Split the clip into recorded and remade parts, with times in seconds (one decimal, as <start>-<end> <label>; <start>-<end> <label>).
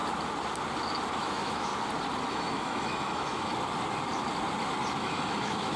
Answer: 0.0-1.2 recorded; 1.2-1.7 remade; 1.7-2.3 recorded; 2.3-3.5 remade; 3.5-5.0 recorded; 5.0-5.8 remade